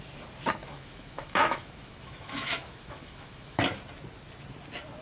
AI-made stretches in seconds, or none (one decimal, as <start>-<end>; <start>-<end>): 0.6-3.6